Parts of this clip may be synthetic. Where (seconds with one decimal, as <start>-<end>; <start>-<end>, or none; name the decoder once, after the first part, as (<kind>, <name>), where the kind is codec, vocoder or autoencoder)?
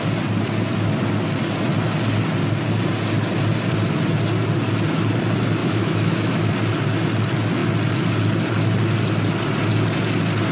5.6-6.5 (autoencoder, DAC-VAE)